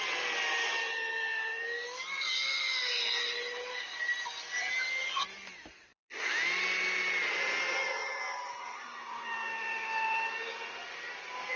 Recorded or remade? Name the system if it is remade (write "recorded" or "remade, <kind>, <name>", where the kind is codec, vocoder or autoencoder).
recorded